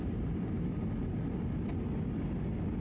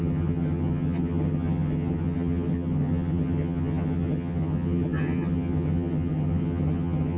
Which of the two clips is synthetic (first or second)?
second